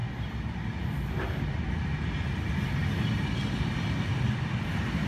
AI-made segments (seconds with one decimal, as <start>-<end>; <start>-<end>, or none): none